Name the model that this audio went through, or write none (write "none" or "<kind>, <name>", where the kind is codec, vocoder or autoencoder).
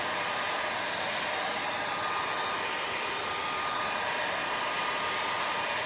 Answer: none